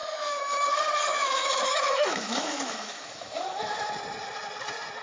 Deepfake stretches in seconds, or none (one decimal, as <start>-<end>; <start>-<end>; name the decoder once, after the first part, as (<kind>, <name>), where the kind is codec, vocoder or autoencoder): 0.0-0.7 (autoencoder, DAC-VAE); 1.1-3.9